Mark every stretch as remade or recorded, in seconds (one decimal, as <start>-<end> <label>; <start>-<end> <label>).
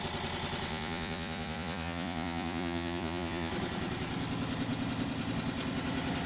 0.0-0.7 recorded; 0.7-3.5 remade; 3.5-6.3 recorded